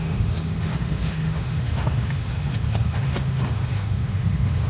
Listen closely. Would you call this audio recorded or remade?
remade